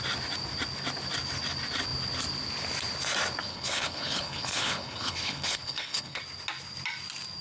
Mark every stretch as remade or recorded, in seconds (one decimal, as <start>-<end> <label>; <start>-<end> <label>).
0.0-3.5 recorded; 3.5-6.2 remade; 6.2-7.4 recorded